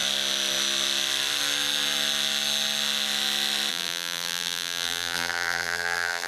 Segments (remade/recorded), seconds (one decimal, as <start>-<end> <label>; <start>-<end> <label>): 0.0-3.7 recorded; 3.7-6.3 remade